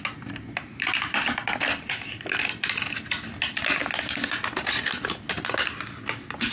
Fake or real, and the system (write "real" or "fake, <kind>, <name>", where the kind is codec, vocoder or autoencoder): real